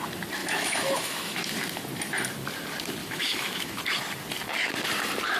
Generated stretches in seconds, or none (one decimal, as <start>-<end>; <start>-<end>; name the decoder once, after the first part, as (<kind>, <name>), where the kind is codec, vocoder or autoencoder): 0.4-1.5 (autoencoder, DAC-VAE); 3.0-3.8